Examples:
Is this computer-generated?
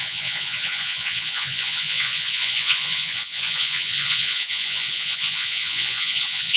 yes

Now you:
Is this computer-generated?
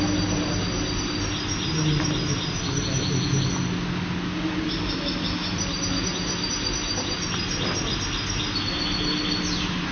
no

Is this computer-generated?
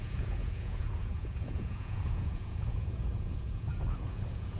yes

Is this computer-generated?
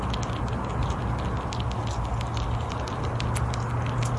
no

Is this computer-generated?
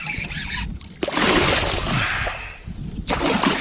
no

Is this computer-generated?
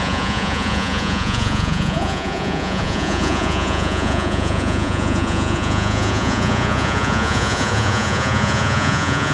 yes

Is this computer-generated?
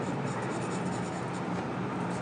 no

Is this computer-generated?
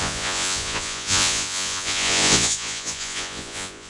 yes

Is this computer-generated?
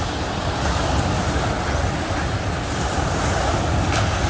no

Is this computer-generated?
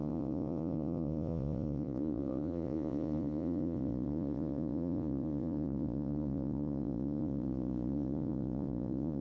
yes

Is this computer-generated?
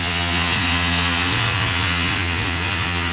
yes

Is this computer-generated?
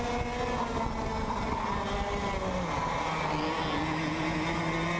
no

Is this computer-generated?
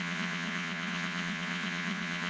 yes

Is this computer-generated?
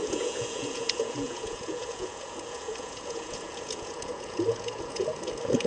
yes